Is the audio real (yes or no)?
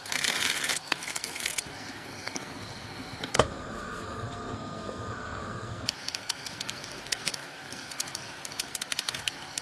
no